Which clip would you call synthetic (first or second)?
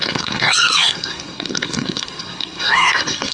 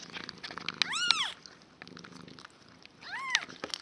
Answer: first